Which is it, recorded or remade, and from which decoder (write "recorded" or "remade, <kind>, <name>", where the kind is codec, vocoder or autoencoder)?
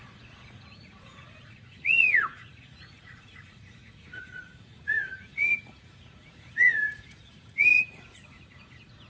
remade, vocoder, Vocos